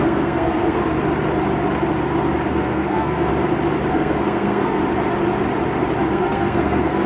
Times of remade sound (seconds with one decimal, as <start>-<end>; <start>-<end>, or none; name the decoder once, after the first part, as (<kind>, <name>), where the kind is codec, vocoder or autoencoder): 0.0-0.8 (codec, SNAC); 2.5-3.3; 3.9-4.8; 6.1-7.1